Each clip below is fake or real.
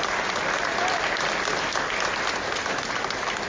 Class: real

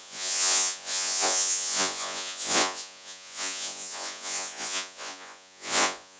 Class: fake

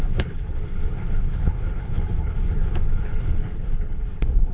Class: fake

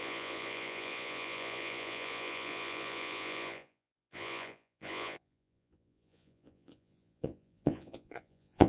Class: fake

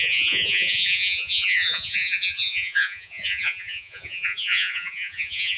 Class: fake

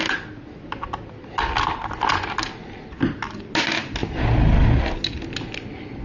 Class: real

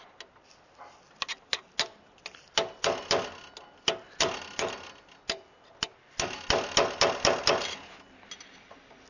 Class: real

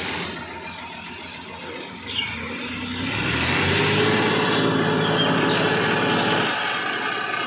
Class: real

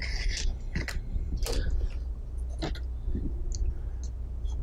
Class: real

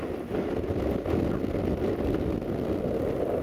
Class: real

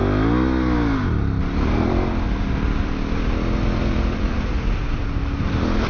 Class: real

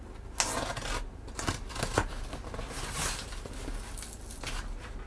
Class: real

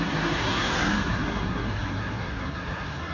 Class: fake